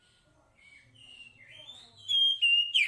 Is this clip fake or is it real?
real